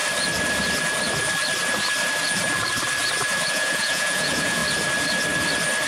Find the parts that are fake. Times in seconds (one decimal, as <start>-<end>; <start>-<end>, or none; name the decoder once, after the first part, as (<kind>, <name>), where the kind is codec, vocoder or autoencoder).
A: 3.5-4.6 (vocoder, Vocos)